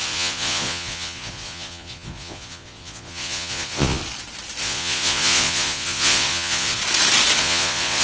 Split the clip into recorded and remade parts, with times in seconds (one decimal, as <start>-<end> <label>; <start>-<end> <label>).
0.0-4.0 remade; 4.0-4.6 recorded; 4.6-6.8 remade; 6.8-7.4 recorded; 7.4-8.0 remade